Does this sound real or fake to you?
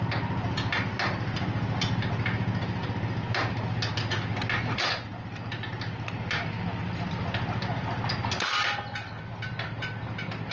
real